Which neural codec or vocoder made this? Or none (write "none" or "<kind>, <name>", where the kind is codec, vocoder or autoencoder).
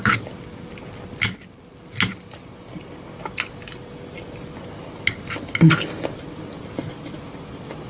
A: none